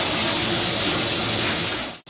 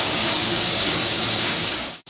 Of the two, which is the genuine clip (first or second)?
first